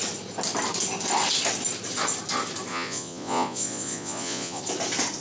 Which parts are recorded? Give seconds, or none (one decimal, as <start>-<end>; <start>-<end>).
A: 0.0-2.7; 4.6-5.2